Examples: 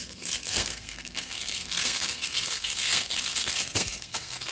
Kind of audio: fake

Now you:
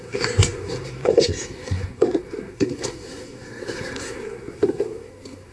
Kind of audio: fake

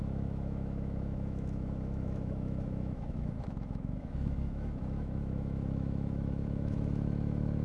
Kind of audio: fake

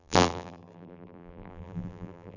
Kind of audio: fake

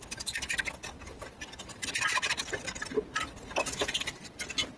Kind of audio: real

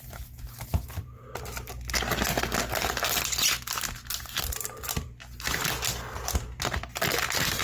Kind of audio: real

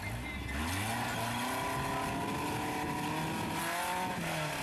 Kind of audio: real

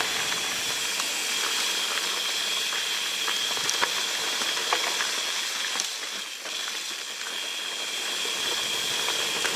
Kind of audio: real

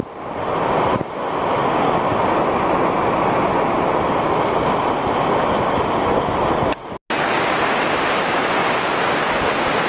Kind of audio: real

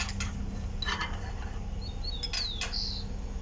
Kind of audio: real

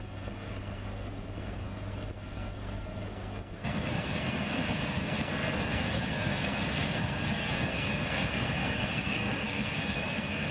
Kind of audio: fake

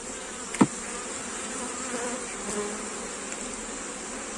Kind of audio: real